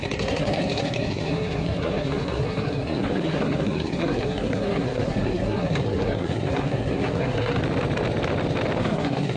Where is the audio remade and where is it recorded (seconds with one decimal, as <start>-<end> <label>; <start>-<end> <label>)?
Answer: 0.0-7.6 remade; 7.6-8.8 recorded; 8.8-9.4 remade